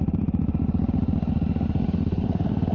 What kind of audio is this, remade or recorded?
remade